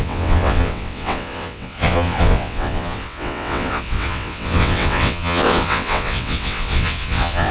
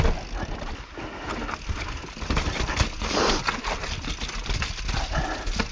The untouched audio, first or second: second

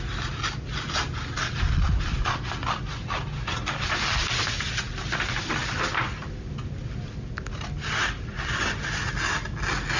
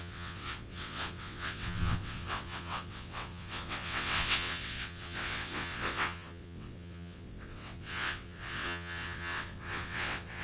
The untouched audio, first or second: first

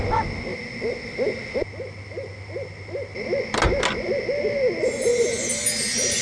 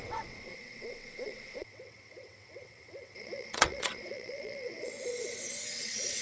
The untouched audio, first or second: first